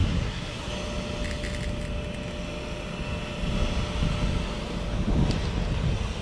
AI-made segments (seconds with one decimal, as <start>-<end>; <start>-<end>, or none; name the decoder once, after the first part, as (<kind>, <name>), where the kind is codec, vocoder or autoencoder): 0.0-0.7 (codec, SNAC)